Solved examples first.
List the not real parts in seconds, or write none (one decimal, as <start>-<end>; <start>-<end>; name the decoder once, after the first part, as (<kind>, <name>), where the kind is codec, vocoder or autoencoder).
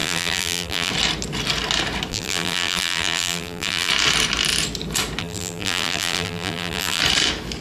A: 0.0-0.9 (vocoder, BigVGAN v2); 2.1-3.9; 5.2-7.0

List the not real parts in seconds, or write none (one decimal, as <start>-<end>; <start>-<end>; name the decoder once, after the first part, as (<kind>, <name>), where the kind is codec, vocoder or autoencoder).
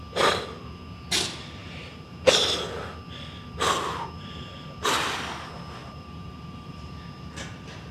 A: 1.6-2.3 (vocoder, BigVGAN v2); 5.8-7.9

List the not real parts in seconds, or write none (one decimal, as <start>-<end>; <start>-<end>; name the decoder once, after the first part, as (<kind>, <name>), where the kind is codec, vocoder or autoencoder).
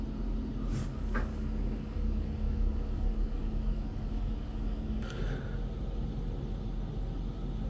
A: 0.8-5.2 (codec, DAC)